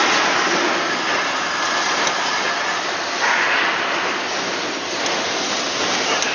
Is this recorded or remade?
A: recorded